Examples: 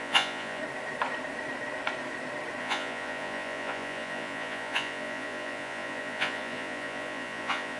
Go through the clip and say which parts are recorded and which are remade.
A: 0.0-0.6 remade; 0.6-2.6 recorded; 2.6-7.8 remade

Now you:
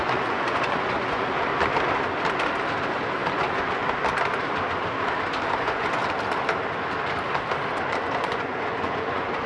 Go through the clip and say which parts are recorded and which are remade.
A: 0.0-1.5 remade; 1.5-3.3 recorded; 3.3-3.8 remade; 3.8-5.6 recorded; 5.6-6.0 remade; 6.0-7.9 recorded; 7.9-9.5 remade